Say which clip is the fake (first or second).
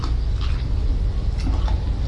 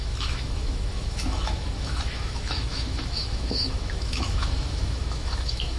second